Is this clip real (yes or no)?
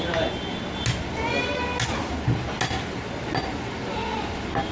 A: yes